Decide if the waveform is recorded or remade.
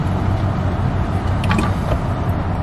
recorded